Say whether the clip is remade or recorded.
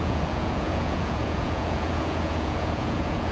remade